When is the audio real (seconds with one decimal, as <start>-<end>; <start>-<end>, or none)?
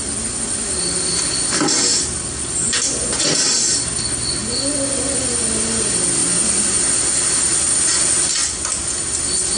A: 0.0-9.6